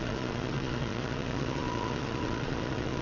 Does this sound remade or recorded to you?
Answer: remade